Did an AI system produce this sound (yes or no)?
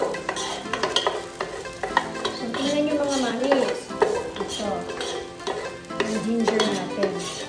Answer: no